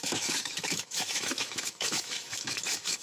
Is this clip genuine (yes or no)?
no